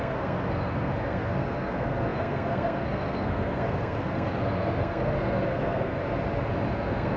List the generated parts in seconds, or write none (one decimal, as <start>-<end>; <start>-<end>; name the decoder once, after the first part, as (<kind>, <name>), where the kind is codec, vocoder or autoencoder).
0.0-6.0 (codec, SNAC); 6.7-7.2